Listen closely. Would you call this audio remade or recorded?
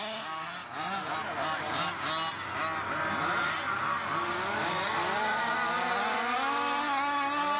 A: recorded